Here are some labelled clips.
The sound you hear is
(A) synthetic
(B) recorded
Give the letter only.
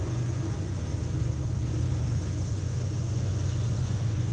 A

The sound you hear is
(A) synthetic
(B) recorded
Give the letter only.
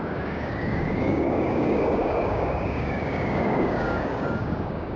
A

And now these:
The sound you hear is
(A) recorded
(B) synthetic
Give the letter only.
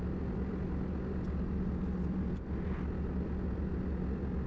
A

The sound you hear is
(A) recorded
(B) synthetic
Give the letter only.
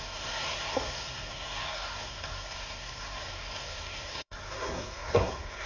B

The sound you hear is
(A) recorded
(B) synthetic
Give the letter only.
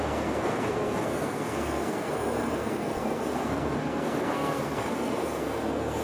B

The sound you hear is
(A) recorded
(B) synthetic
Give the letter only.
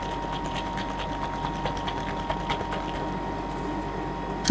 A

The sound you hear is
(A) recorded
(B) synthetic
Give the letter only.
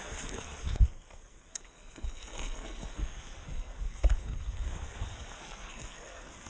B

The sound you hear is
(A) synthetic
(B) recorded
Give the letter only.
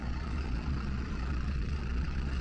A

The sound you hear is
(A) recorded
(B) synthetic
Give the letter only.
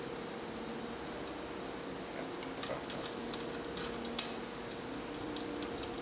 A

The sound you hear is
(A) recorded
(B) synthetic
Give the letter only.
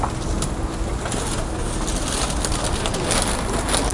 A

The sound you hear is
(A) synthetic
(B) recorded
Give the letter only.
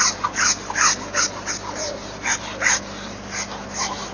B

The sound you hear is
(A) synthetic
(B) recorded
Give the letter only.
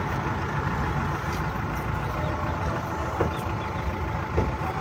B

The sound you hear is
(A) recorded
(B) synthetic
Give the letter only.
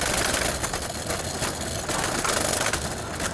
A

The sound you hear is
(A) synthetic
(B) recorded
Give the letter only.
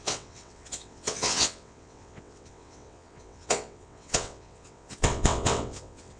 A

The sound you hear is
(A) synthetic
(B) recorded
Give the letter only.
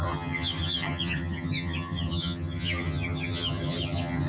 A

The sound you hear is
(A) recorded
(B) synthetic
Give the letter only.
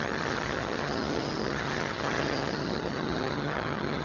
B